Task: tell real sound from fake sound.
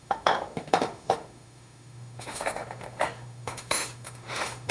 fake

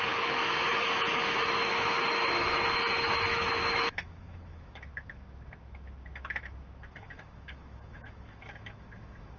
fake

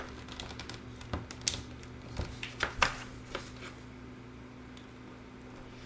real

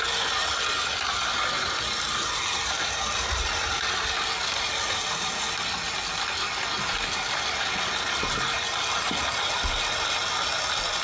real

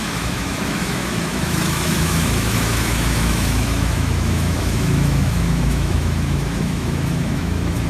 fake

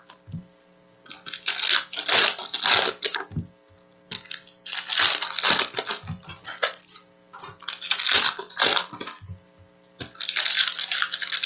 real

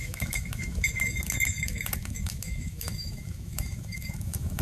fake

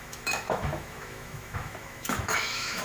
fake